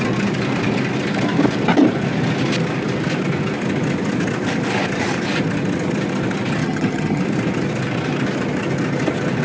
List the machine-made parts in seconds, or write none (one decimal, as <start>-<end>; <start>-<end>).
6.6-7.2